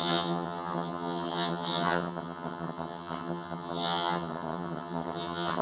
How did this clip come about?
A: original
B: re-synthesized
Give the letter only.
B